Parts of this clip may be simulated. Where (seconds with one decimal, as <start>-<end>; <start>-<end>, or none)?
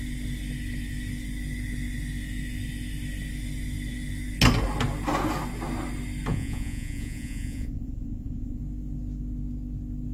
6.3-8.6